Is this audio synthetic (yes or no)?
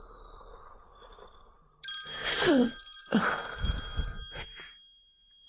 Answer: no